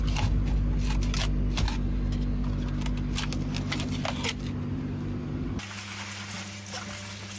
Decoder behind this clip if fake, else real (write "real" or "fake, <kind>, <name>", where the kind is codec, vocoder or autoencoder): real